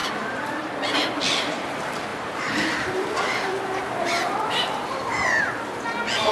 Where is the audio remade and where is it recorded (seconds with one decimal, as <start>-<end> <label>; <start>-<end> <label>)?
0.0-0.7 remade; 0.7-2.1 recorded; 2.1-5.4 remade; 5.4-6.3 recorded